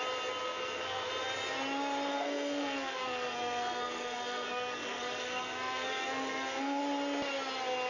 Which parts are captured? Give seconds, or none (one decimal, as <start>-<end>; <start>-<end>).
0.0-0.4; 1.1-2.1; 6.8-7.9